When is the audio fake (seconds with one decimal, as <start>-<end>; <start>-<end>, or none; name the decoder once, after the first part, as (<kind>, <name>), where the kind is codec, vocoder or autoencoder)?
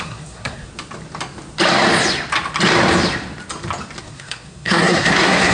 0.0-0.7 (codec, SNAC); 4.0-5.5